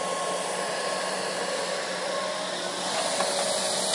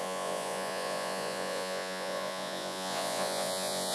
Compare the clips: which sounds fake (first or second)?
second